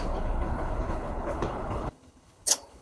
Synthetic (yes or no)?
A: yes